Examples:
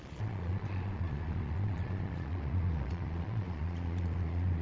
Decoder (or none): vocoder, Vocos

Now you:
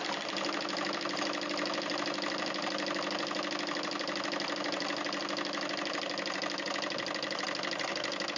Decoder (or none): none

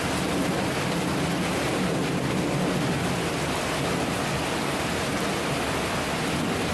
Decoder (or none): none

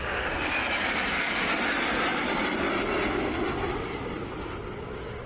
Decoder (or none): none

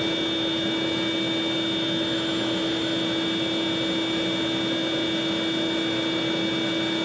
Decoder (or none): none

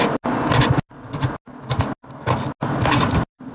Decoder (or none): none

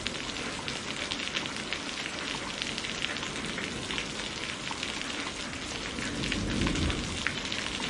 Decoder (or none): none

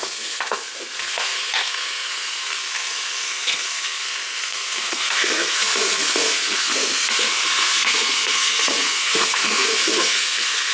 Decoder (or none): codec, SNAC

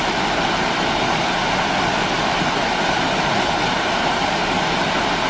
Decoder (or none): none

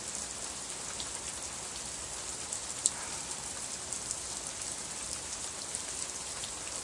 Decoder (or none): none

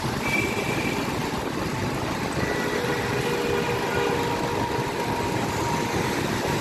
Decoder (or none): none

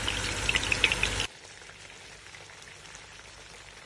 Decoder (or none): none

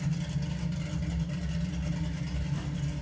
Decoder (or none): none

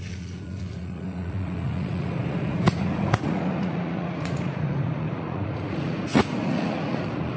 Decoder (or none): vocoder, Vocos